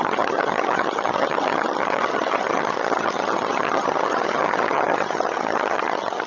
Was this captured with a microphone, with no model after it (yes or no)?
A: no